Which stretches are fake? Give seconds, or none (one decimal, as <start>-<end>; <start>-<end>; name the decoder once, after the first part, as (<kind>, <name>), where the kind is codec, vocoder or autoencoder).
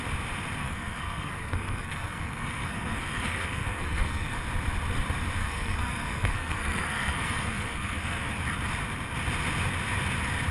0.6-4.4 (codec, SNAC); 5.4-8.3